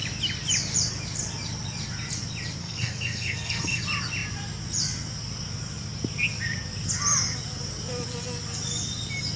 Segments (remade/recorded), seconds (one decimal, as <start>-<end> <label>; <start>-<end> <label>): 0.0-2.6 recorded; 2.6-3.8 remade; 3.8-9.4 recorded